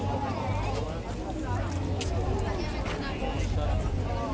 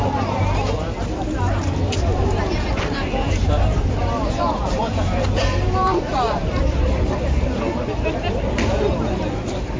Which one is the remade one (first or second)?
second